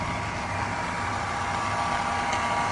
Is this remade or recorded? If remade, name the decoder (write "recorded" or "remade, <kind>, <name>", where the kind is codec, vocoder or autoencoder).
recorded